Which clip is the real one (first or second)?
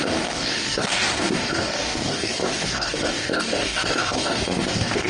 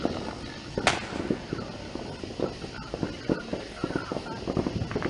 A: second